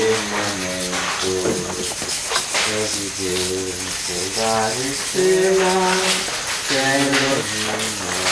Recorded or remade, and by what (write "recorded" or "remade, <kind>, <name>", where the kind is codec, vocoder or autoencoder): recorded